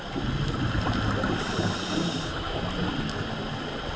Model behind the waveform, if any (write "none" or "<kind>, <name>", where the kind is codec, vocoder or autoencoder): none